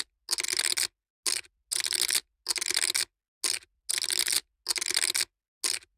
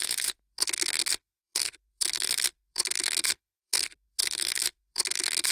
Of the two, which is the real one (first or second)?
first